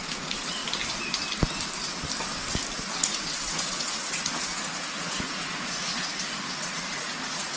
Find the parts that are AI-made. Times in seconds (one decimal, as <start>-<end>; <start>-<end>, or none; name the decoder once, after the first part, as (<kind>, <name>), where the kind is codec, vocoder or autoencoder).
0.0-0.6 (vocoder, Vocos); 2.9-7.6